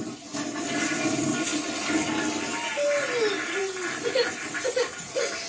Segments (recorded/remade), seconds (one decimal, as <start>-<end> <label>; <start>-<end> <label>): 0.0-5.5 recorded